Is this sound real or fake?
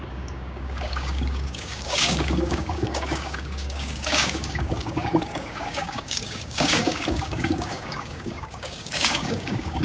fake